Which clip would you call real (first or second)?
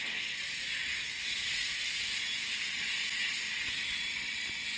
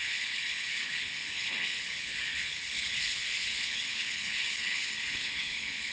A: first